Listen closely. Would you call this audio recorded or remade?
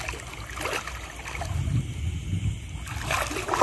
recorded